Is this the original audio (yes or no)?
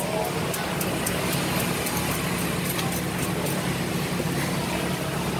yes